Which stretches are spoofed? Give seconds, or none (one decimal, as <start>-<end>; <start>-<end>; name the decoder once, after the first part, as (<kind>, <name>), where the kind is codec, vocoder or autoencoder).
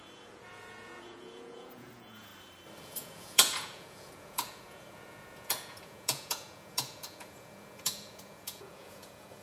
0.0-2.3 (vocoder, Vocos); 2.8-9.4